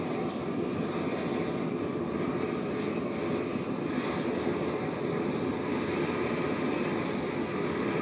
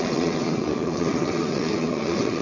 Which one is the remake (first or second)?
second